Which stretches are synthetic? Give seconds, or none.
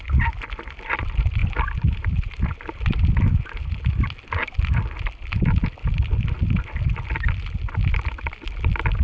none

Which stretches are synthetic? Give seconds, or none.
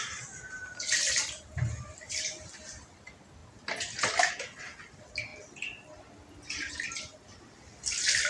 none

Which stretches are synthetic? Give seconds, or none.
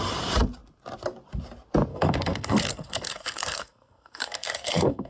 1.9-5.1 (codec, SNAC)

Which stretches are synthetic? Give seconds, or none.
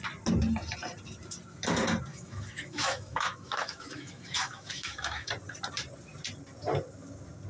2.1-5.3 (autoencoder, DAC-VAE)